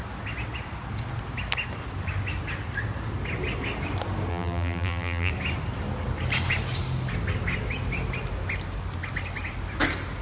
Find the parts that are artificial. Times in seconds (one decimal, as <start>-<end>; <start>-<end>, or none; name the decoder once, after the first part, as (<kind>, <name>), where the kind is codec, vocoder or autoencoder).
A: 4.3-5.3 (vocoder, BigVGAN v2)